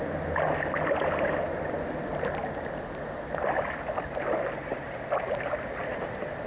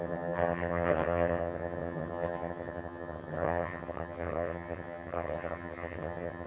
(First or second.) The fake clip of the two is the second